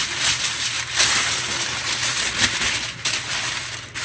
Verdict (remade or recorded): recorded